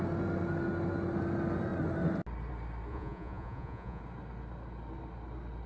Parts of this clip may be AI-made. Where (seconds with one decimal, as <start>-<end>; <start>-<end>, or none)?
2.9-4.0